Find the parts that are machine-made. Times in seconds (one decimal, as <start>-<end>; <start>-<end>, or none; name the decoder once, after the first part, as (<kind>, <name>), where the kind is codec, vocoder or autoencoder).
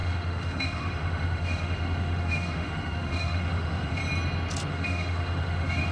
0.0-4.0 (autoencoder, DAC-VAE); 4.7-5.9